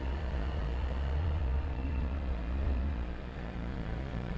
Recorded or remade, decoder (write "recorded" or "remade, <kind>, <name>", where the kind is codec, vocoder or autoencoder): remade, vocoder, Vocos